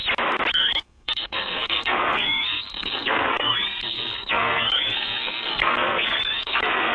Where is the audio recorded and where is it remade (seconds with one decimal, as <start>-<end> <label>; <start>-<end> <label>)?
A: 0.0-0.5 recorded; 0.5-6.9 remade